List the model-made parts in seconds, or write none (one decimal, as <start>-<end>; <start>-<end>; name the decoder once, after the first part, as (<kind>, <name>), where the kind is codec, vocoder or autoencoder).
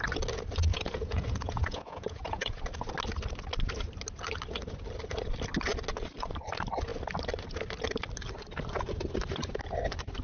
0.7-2.6 (vocoder, Vocos)